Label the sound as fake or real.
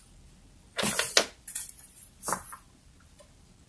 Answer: real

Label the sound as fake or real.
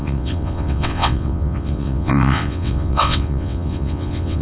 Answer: fake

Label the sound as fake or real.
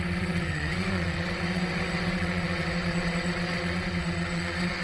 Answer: fake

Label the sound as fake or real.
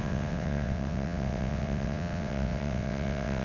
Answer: fake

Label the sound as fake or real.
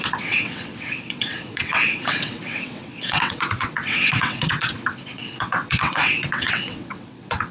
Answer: fake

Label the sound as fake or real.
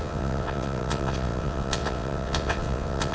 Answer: fake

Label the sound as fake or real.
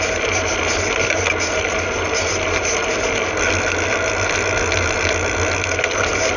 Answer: real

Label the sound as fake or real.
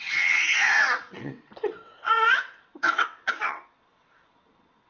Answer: fake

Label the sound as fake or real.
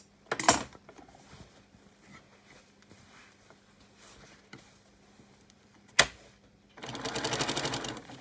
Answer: real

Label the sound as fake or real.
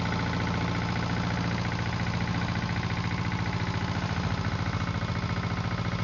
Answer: real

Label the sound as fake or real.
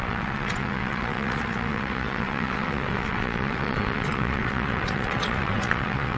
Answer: fake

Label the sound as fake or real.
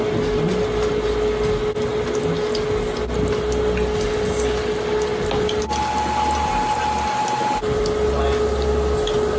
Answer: real